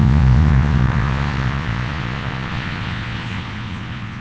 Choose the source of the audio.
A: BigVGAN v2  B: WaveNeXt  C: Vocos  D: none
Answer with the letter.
C